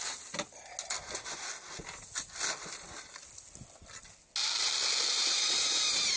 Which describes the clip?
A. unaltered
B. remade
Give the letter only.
A